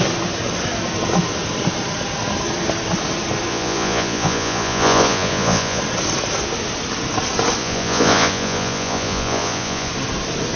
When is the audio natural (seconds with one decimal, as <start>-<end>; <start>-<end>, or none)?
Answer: 0.0-3.5; 5.8-7.6; 9.9-10.6